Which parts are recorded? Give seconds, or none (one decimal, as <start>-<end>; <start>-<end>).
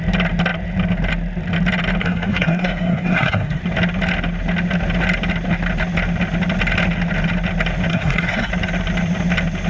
0.0-2.0; 3.6-7.9; 8.5-9.7